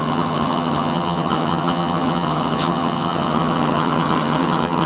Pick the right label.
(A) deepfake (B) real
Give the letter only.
A